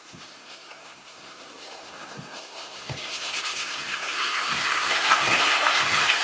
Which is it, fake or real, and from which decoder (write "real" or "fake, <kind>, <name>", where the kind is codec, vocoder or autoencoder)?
fake, codec, SNAC